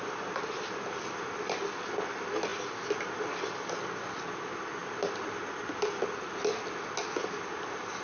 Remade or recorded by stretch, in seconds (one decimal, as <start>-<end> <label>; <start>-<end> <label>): 0.0-8.0 recorded